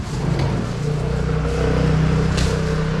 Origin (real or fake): real